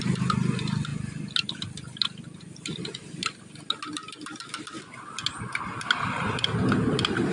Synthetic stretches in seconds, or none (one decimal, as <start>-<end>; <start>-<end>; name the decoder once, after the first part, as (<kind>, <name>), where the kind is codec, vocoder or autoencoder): none